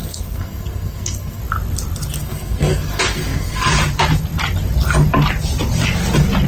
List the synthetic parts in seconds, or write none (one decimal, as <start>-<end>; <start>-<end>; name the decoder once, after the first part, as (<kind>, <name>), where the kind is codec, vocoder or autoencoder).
0.0-1.4 (codec, SNAC); 2.2-3.7